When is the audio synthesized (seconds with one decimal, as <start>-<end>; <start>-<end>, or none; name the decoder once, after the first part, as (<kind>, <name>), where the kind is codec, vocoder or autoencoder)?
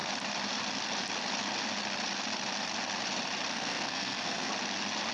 3.5-4.5 (codec, SNAC)